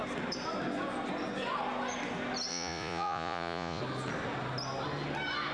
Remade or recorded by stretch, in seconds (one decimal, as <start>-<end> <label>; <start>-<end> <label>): 0.0-2.5 recorded; 2.5-3.8 remade; 3.8-5.5 recorded